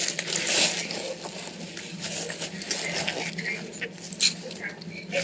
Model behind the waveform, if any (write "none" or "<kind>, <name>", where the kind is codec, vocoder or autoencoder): none